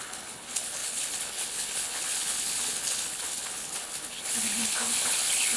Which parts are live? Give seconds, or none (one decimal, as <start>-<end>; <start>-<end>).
none